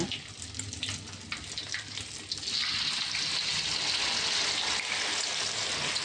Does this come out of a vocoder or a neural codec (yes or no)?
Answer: no